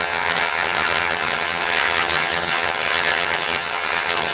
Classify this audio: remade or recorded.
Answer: remade